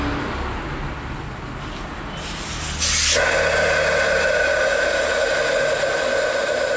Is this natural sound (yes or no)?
yes